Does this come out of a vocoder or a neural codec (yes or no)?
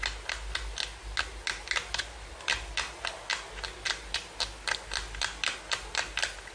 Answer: no